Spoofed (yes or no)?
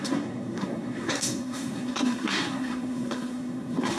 yes